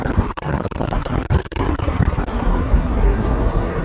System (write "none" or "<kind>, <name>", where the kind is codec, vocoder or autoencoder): codec, SNAC